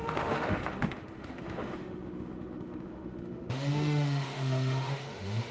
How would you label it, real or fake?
fake